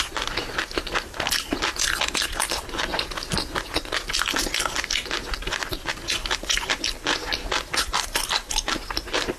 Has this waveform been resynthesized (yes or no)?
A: no